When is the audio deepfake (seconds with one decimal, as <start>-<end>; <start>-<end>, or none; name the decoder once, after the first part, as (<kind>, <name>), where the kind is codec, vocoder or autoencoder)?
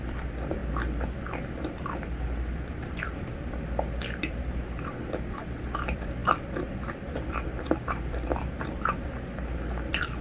0.0-10.2 (vocoder, BigVGAN v2)